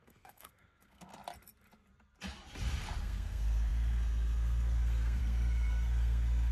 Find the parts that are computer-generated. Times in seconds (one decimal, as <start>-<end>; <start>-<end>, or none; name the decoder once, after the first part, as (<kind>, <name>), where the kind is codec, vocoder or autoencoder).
0.0-1.1 (codec, SNAC); 3.0-6.5